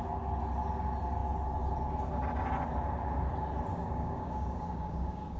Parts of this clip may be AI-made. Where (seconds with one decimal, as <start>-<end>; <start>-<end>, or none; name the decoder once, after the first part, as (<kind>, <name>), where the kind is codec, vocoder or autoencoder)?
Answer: 3.7-5.4 (codec, DAC)